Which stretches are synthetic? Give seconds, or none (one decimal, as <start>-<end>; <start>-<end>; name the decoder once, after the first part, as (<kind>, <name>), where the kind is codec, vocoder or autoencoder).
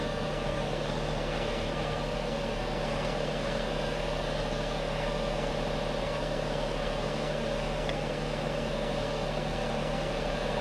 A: 0.0-5.5 (codec, SNAC); 6.0-10.6